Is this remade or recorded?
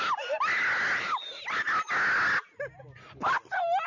recorded